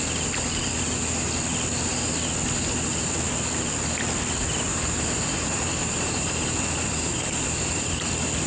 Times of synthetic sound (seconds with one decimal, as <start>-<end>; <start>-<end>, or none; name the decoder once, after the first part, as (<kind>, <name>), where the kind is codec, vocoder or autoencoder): 4.7-8.1 (vocoder, BigVGAN v2)